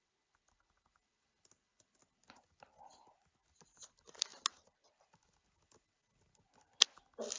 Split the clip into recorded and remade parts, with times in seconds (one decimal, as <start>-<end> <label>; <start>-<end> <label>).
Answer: 0.0-7.4 recorded